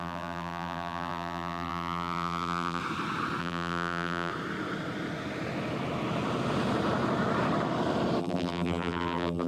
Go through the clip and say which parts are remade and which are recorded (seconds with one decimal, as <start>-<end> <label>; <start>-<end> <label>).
0.0-2.8 remade; 2.8-3.4 recorded; 3.4-4.3 remade; 4.3-8.2 recorded; 8.2-9.5 remade